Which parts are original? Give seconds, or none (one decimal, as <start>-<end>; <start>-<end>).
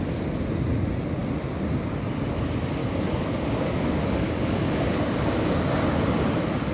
0.0-2.8; 5.7-6.7